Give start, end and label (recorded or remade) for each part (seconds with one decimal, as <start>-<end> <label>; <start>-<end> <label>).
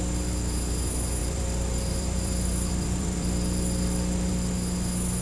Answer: 0.0-1.2 recorded; 1.2-4.3 remade; 4.3-5.2 recorded